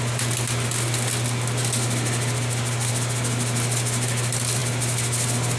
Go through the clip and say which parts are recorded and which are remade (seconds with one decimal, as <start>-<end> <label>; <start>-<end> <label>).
0.0-5.6 recorded

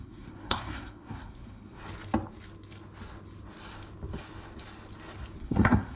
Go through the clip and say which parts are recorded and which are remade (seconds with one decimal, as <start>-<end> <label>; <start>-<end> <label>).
0.0-1.8 remade; 1.8-5.4 recorded; 5.4-6.0 remade

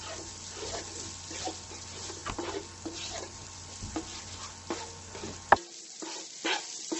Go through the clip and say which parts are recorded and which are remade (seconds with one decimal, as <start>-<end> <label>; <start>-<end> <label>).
0.0-7.0 recorded

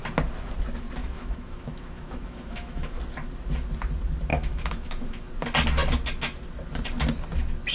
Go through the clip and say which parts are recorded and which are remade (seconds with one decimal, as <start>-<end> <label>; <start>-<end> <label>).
0.0-1.0 recorded; 1.0-3.0 remade; 3.0-4.3 recorded; 4.3-5.3 remade; 5.3-7.7 recorded

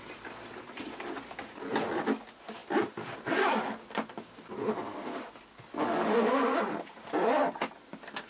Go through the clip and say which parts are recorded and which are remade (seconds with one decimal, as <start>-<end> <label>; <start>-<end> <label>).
0.0-8.3 recorded

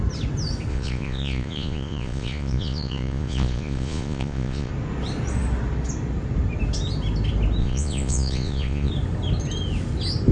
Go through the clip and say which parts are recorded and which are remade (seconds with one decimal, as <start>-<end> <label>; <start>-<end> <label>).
0.0-0.7 recorded; 0.7-4.7 remade; 4.7-7.6 recorded; 7.6-8.9 remade; 8.9-10.3 recorded